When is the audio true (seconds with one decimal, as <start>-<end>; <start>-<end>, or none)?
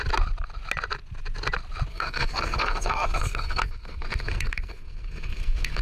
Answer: 0.0-1.9